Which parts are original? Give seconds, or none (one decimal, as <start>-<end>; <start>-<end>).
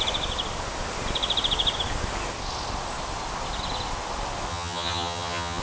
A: 0.0-4.5